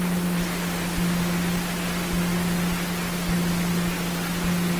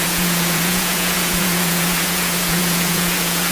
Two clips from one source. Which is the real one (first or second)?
first